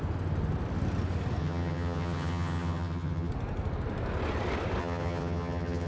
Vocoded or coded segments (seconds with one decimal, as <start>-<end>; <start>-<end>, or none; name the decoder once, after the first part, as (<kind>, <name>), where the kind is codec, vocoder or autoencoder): 1.4-3.3 (vocoder, HiFi-GAN); 4.8-5.9

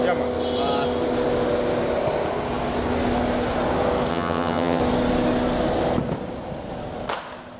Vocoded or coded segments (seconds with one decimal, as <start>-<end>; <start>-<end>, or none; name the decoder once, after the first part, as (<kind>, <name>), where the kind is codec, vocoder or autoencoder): 4.1-4.8 (vocoder, HiFi-GAN)

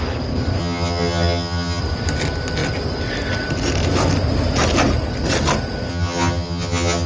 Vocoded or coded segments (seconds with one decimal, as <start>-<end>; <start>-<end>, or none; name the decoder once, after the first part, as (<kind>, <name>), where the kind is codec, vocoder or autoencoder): 0.6-1.8 (vocoder, HiFi-GAN); 5.9-7.1